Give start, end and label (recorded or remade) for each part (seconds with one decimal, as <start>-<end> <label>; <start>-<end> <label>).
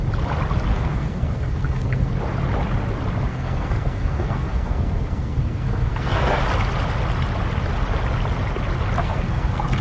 0.0-0.7 recorded; 0.7-2.1 remade; 2.1-3.3 recorded; 3.3-6.4 remade; 6.4-9.0 recorded; 9.0-9.8 remade